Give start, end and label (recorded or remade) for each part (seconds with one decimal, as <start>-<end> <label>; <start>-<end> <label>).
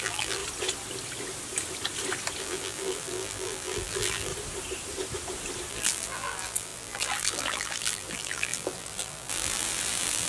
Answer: 0.0-0.4 remade; 0.4-2.4 recorded; 2.4-4.3 remade; 4.3-5.7 recorded; 5.7-10.3 remade